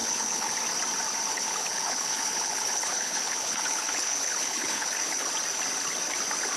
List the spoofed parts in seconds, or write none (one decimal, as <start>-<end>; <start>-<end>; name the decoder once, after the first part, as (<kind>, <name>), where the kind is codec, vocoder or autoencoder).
0.0-0.5 (codec, HILCodec); 1.3-5.3